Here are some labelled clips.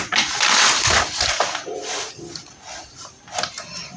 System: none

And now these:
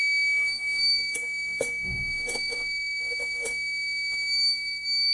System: autoencoder, DAC-VAE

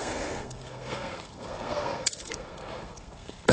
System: codec, SNAC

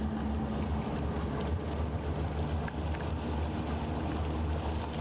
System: none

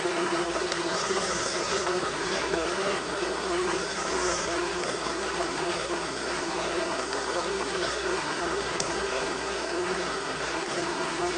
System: codec, SNAC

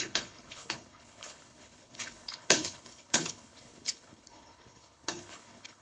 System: codec, HILCodec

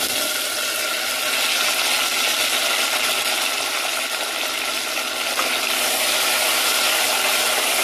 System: none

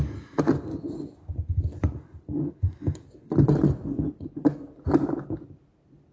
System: none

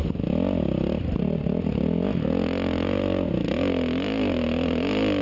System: none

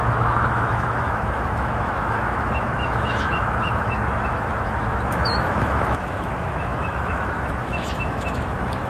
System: autoencoder, DAC-VAE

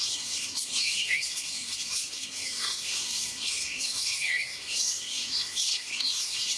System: codec, SNAC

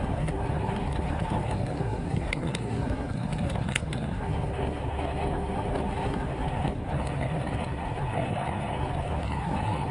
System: codec, SNAC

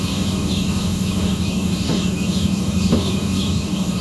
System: codec, DAC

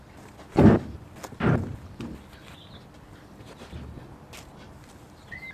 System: none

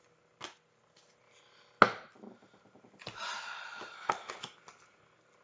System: none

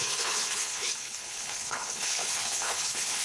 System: codec, HILCodec